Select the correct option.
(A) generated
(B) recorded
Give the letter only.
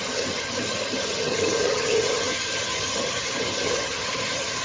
A